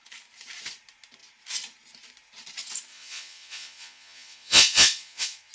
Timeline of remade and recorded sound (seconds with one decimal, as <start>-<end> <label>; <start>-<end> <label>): 0.0-2.9 recorded; 2.9-5.5 remade